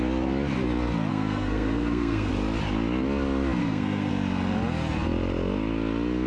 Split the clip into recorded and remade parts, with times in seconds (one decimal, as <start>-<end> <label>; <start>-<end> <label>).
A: 0.0-1.1 recorded; 1.1-2.3 remade; 2.3-3.6 recorded; 3.6-4.1 remade; 4.1-6.3 recorded